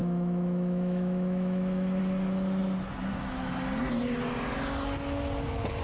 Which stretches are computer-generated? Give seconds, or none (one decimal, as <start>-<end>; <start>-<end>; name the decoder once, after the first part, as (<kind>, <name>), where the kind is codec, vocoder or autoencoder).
0.0-2.0 (autoencoder, DAC-VAE)